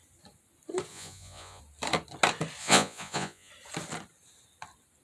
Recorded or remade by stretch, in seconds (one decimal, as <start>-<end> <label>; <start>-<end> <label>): 0.0-0.9 recorded; 0.9-1.6 remade; 1.6-2.6 recorded; 2.6-3.5 remade; 3.5-5.0 recorded